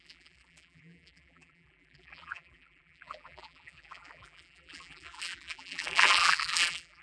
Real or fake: fake